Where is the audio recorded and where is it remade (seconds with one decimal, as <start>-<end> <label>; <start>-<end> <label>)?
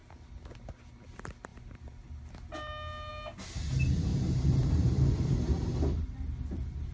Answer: 0.0-4.1 recorded; 4.1-5.5 remade; 5.5-6.9 recorded